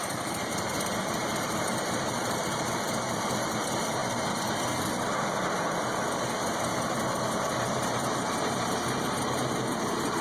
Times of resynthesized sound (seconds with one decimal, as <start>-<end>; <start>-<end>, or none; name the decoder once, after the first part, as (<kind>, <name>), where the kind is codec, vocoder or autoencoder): 0.0-4.0 (vocoder, BigVGAN v2); 7.1-10.2